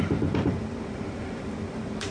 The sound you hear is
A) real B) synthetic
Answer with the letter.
B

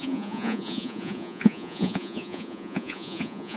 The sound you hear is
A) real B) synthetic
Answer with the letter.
B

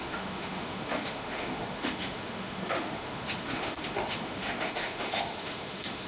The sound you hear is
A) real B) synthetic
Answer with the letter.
B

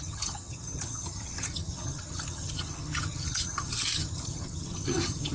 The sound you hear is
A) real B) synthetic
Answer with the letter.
B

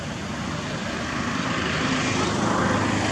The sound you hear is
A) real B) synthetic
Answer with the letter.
A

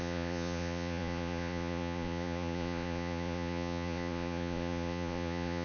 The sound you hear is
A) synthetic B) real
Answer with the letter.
A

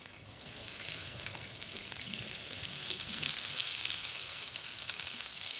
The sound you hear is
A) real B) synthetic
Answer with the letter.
B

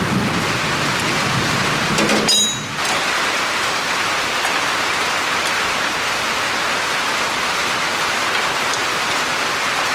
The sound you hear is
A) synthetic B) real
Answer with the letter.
B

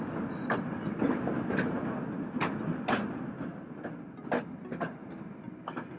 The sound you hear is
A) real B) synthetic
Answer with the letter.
A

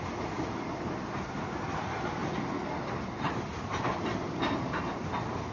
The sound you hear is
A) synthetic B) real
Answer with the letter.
B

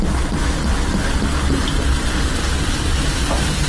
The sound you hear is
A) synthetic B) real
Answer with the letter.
B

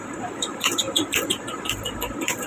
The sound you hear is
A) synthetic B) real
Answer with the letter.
A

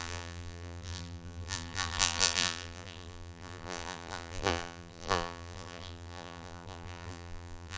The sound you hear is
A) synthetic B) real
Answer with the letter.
A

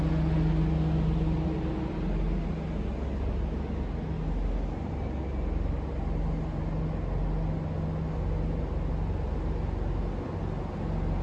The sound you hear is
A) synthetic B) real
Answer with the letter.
B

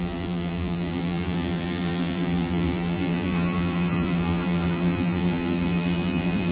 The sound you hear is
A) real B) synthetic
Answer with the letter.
B